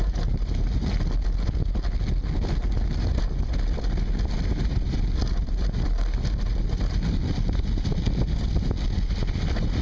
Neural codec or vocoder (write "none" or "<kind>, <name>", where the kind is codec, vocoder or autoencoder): none